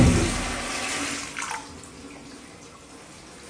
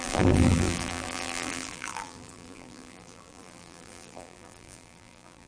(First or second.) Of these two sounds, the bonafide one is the first